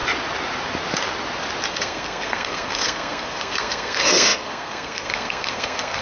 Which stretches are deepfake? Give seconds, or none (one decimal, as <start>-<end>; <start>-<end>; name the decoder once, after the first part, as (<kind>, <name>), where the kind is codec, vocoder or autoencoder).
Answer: 1.7-6.0 (codec, SNAC)